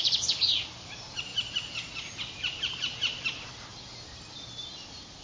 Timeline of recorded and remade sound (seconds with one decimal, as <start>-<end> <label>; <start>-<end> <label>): 0.0-5.2 remade